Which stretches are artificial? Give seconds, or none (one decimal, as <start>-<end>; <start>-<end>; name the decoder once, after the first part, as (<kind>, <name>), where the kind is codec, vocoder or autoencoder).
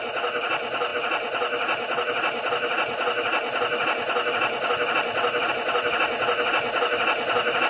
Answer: none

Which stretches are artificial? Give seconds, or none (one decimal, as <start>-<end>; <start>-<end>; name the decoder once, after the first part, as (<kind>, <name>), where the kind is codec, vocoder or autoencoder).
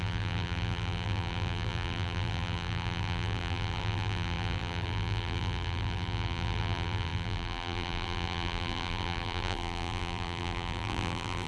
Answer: 0.0-11.5 (vocoder, BigVGAN v2)